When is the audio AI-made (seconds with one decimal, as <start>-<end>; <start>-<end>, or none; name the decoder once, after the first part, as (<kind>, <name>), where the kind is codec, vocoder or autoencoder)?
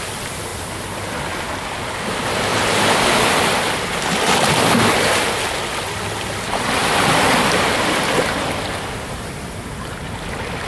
2.5-3.6 (vocoder, BigVGAN v2); 6.8-8.0